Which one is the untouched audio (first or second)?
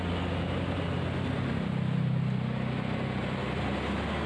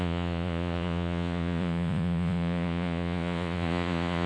first